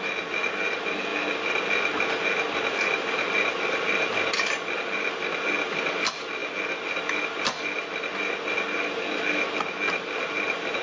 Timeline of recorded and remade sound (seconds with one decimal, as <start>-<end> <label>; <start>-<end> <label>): 0.0-10.8 recorded